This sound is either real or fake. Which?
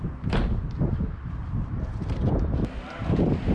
real